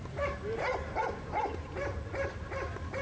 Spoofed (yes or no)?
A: yes